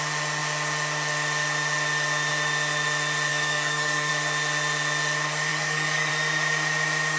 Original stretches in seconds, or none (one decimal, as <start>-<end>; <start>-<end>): 0.0-3.3; 4.1-5.5; 6.1-7.2